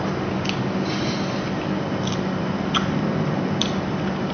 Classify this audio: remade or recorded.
recorded